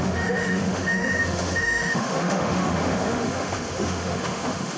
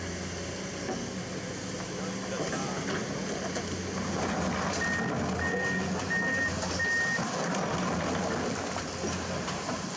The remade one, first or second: first